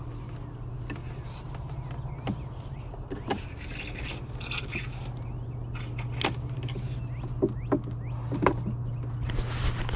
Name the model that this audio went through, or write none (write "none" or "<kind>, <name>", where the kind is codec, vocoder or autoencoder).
none